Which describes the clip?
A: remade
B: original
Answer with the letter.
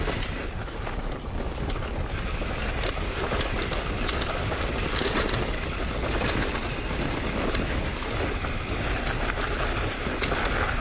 B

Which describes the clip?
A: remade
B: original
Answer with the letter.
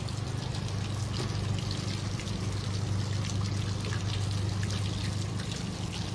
B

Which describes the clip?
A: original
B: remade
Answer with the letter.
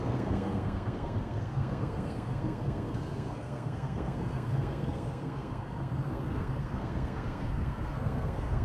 B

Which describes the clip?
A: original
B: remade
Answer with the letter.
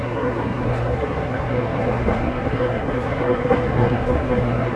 B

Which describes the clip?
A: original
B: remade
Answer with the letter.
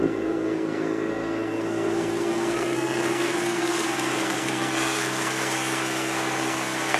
B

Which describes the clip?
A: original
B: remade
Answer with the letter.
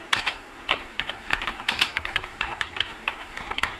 B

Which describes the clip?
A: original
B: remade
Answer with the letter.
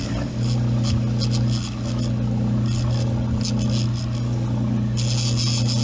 A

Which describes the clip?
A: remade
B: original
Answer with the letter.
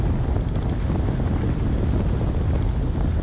B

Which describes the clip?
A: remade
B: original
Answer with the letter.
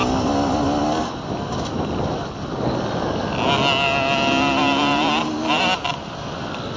B